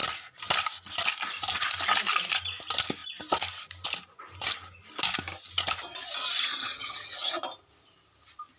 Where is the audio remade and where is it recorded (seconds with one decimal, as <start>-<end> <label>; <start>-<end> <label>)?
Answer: 0.0-6.6 recorded; 6.6-7.3 remade; 7.3-8.6 recorded

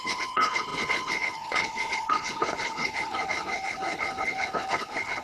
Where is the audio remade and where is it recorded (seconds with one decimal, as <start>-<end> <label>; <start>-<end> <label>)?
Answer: 0.0-5.2 remade

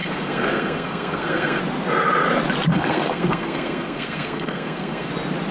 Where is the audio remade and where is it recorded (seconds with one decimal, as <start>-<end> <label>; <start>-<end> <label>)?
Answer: 0.0-1.6 remade; 1.6-2.7 recorded; 2.7-5.1 remade; 5.1-5.5 recorded

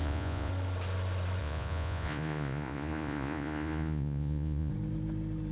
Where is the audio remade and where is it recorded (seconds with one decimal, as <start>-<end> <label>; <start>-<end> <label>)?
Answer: 0.0-0.5 remade; 0.5-1.4 recorded; 1.4-4.7 remade; 4.7-5.5 recorded

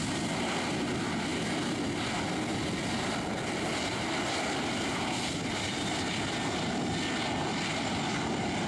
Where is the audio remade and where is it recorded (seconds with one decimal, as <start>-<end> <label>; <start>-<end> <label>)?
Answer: 0.0-8.7 recorded

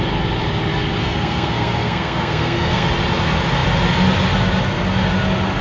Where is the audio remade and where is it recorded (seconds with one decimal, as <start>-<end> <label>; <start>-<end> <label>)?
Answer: 0.0-1.0 recorded; 1.0-2.9 remade; 2.9-5.6 recorded

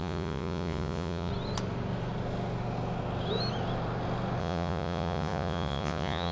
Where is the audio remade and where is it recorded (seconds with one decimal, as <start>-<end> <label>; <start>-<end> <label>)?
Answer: 0.0-1.3 remade; 1.3-4.4 recorded; 4.4-6.3 remade